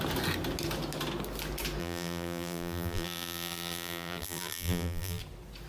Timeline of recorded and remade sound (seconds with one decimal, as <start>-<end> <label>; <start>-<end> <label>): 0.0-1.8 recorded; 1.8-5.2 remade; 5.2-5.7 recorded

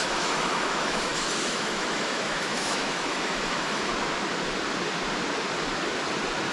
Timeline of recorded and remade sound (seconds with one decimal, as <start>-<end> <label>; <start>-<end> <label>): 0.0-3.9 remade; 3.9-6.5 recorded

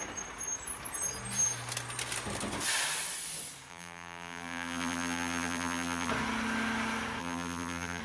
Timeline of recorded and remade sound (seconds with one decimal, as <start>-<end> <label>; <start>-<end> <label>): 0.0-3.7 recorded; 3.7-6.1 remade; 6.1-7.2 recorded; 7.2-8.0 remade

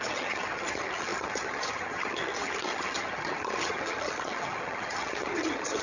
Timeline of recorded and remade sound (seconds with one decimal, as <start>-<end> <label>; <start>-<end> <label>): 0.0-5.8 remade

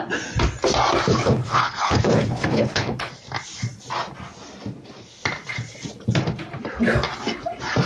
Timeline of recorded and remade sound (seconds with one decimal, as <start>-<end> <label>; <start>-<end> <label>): 0.0-1.1 recorded; 1.1-3.1 remade; 3.1-7.9 recorded